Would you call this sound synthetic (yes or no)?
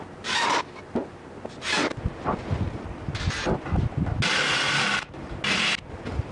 no